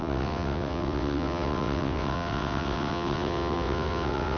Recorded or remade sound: remade